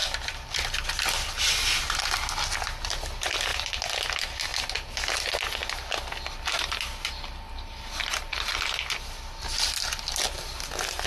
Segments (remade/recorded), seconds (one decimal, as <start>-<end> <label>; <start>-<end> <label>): 0.0-11.1 recorded